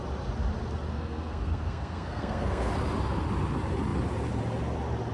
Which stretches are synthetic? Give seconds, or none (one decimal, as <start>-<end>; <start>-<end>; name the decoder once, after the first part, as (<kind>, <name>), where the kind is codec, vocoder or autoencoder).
0.9-2.7 (codec, SNAC)